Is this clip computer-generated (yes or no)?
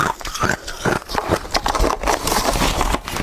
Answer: yes